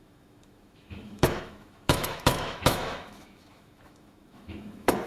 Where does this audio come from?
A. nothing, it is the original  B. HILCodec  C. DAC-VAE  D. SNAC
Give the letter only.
C